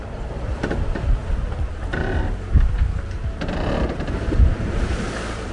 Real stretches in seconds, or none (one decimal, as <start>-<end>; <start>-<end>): 1.2-4.1